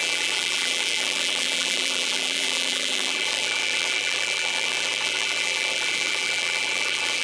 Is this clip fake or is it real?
fake